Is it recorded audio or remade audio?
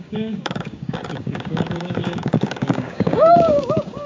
remade